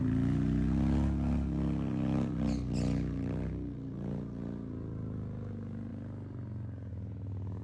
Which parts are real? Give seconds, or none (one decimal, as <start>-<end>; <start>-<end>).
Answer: 0.0-7.6